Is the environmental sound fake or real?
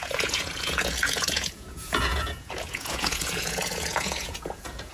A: fake